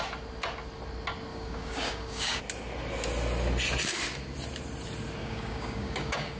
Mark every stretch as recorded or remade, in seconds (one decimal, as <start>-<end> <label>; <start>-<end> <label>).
0.0-1.3 recorded; 1.3-2.4 remade; 2.4-5.2 recorded; 5.2-6.4 remade

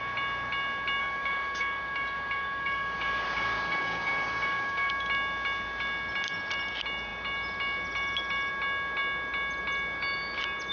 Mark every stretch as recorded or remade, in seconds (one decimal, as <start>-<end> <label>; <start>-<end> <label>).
0.0-1.0 recorded; 1.0-4.9 remade; 4.9-10.7 recorded

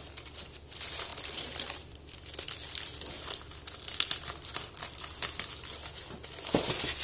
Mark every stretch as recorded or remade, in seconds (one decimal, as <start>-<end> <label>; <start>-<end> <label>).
0.0-7.0 recorded

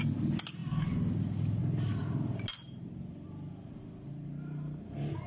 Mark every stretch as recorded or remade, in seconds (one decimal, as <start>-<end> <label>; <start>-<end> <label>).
0.0-5.3 recorded

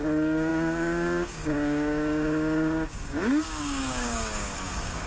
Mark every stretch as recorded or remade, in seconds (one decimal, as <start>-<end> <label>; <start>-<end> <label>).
0.0-5.1 remade

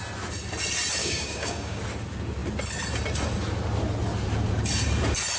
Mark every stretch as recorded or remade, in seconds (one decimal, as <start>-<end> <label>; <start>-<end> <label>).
0.0-1.0 recorded; 1.0-1.8 remade; 1.8-5.4 recorded

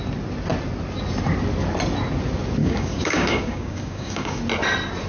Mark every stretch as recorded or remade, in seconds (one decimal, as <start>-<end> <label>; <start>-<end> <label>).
0.0-2.6 recorded; 2.6-4.4 remade; 4.4-5.1 recorded